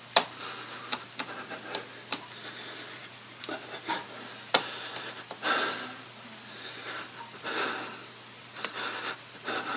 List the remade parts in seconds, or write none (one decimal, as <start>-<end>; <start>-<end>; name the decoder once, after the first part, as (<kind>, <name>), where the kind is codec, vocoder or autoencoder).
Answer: none